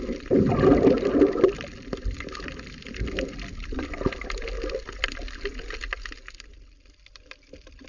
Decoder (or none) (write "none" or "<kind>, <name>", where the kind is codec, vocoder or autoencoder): none